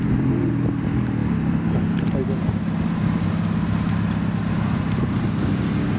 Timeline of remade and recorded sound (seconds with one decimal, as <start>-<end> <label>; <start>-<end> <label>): 0.0-6.0 recorded